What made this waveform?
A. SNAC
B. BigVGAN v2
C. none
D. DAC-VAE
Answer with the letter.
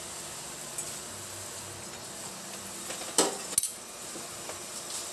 C